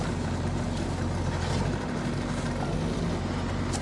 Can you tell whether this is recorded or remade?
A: recorded